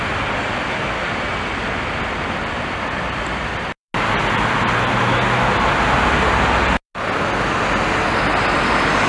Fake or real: real